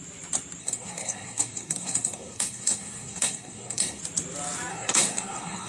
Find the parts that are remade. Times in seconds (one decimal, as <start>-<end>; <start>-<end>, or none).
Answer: 0.6-4.0; 4.7-5.7